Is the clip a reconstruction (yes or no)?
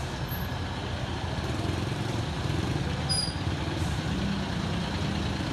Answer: no